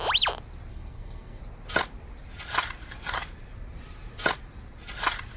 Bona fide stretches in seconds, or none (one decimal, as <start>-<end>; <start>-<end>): 0.0-0.7; 1.4-5.4